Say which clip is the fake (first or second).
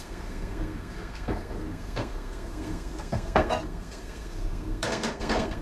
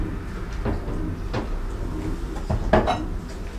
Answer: first